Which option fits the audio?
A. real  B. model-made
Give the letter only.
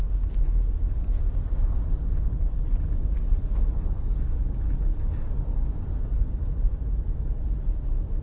A